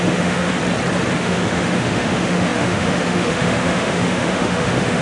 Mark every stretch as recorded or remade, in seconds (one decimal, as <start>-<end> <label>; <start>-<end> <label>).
0.0-0.5 remade; 0.5-1.2 recorded; 1.2-5.0 remade